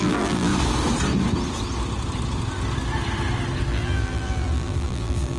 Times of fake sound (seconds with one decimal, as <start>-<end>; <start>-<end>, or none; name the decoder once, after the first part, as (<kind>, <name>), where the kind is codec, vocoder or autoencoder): 0.0-0.5 (vocoder, BigVGAN v2); 3.7-5.4